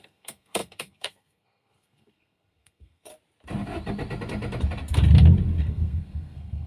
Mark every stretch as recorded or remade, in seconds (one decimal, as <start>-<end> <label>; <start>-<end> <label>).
0.0-3.1 remade; 3.1-5.6 recorded; 5.6-6.7 remade